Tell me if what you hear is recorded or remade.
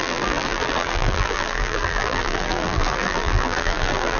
remade